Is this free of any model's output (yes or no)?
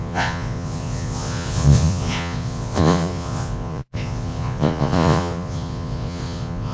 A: no